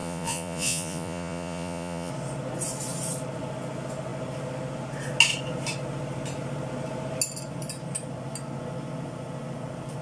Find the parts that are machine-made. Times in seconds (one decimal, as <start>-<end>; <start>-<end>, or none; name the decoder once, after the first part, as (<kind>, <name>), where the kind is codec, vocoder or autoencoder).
0.0-2.1 (vocoder, Vocos)